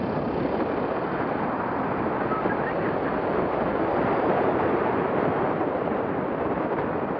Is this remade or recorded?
recorded